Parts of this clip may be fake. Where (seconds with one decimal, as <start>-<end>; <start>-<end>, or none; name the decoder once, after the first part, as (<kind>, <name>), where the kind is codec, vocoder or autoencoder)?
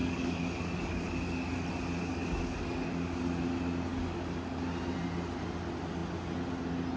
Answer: 0.0-1.7 (codec, DAC); 2.1-3.2; 3.9-4.6